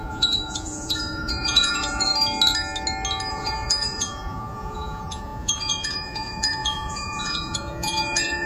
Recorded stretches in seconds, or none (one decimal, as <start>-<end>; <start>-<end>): 2.1-3.3